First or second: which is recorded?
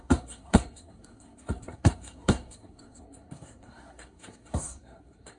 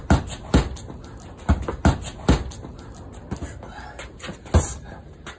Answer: second